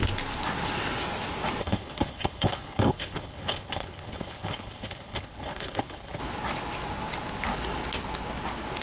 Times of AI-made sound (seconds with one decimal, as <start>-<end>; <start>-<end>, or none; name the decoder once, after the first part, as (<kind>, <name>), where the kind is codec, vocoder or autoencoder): 1.6-6.2 (codec, HILCodec)